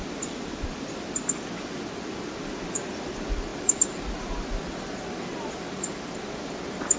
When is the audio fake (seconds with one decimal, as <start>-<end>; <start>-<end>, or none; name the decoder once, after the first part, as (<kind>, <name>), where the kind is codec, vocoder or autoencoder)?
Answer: none